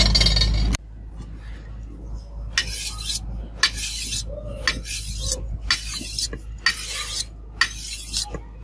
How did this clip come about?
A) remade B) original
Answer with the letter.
B